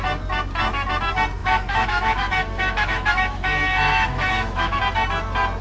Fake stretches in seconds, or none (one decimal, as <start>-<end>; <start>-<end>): 1.4-4.8